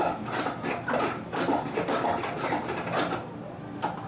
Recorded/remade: recorded